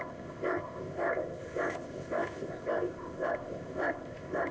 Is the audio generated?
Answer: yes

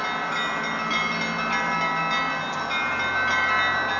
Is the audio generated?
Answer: no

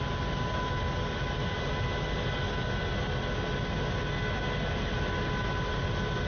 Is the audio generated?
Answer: no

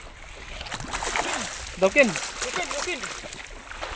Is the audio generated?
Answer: no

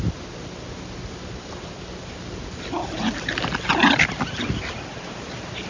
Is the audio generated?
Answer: no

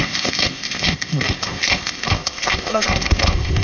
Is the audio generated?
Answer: yes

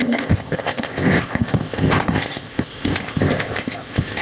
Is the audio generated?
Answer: yes